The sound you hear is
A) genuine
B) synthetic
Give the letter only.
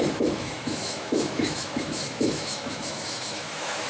B